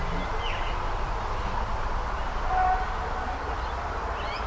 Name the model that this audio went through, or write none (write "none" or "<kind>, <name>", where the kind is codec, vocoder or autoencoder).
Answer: none